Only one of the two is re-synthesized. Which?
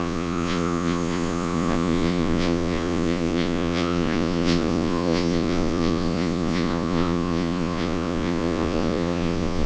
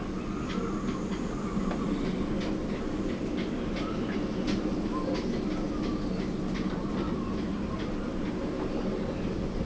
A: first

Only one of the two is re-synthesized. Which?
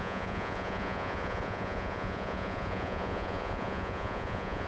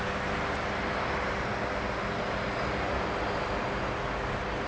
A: first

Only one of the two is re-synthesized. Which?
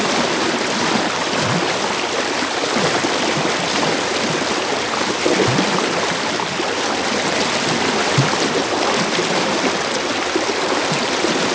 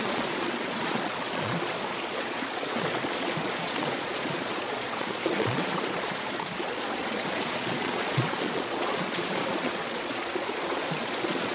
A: second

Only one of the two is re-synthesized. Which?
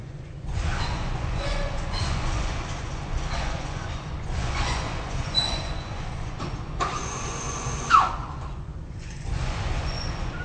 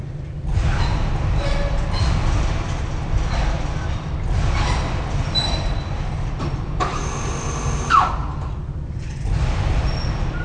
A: first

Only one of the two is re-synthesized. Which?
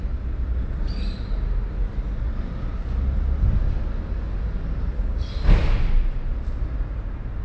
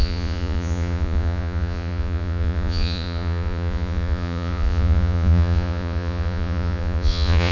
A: second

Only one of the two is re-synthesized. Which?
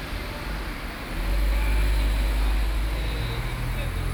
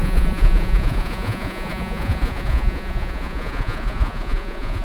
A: second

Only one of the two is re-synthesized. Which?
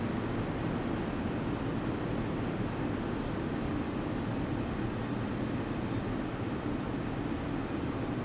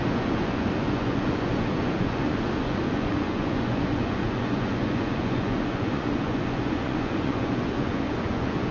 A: second